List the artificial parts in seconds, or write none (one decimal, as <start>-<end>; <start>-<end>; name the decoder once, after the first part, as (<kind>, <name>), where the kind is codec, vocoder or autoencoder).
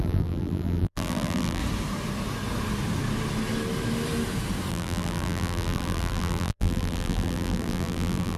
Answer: 0.0-1.6 (vocoder, BigVGAN v2); 4.7-8.4